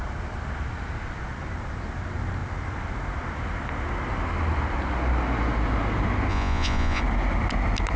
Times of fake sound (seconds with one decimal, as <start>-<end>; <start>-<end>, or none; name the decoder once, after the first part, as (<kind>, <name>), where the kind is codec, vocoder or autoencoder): 6.3-7.0 (vocoder, Vocos)